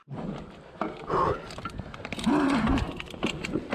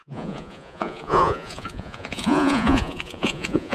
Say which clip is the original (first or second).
first